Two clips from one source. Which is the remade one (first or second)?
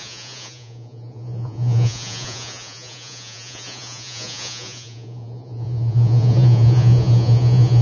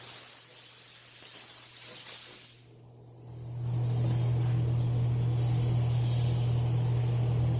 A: first